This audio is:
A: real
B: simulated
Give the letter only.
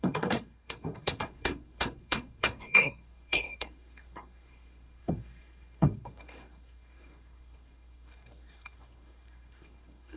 B